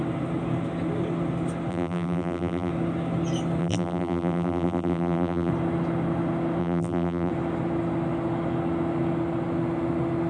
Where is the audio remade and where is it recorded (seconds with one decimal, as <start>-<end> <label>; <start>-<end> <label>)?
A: 0.0-1.7 recorded; 1.7-2.7 remade; 2.7-3.6 recorded; 3.6-5.5 remade; 5.5-6.6 recorded; 6.6-7.3 remade; 7.3-10.3 recorded